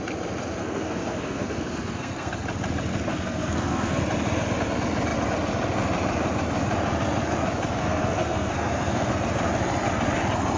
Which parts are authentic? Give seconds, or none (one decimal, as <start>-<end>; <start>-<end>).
0.0-0.6; 2.3-3.1; 4.0-7.8; 9.1-10.6